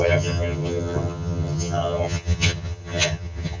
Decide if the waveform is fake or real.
fake